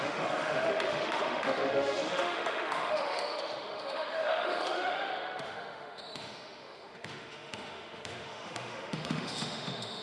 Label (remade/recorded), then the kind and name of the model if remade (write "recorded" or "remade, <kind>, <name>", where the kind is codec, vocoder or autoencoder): remade, autoencoder, DAC-VAE